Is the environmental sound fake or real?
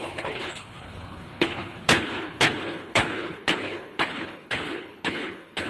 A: fake